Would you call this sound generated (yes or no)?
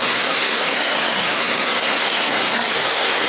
yes